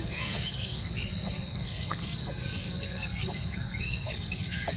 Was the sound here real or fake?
fake